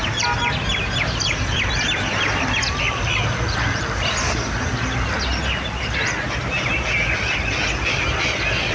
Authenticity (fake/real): real